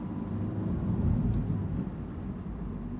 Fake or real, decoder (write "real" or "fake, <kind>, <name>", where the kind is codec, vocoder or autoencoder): real